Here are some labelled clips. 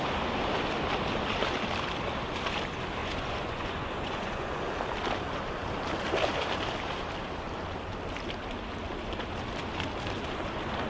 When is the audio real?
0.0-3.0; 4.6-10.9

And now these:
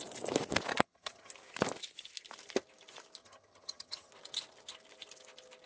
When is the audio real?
0.0-0.7; 1.3-3.2; 4.1-5.7

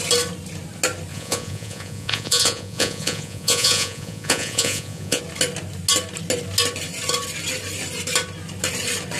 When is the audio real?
0.0-1.1; 5.2-9.2

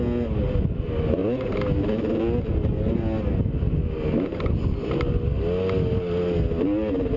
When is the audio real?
0.0-7.2

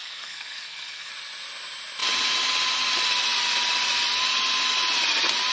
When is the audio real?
1.1-5.5